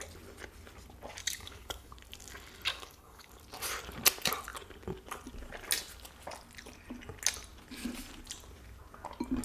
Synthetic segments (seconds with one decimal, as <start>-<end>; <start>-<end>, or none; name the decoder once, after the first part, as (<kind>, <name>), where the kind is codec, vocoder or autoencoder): 1.2-1.9 (codec, DAC); 2.7-3.3